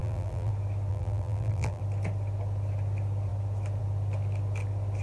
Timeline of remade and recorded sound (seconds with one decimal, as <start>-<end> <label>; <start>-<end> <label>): 0.0-0.5 remade; 0.5-0.9 recorded; 0.9-1.8 remade; 1.8-5.0 recorded